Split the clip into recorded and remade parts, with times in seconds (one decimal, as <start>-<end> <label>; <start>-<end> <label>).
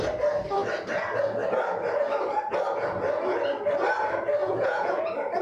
0.0-4.4 recorded; 4.4-5.0 remade; 5.0-5.4 recorded